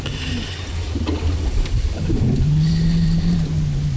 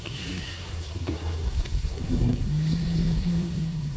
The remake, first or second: second